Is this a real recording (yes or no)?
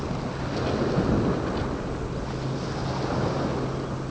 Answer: yes